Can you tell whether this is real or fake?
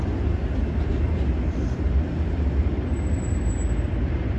real